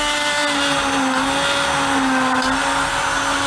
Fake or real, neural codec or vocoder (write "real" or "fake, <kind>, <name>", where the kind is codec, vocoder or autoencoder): real